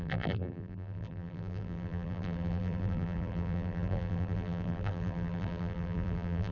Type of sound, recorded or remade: remade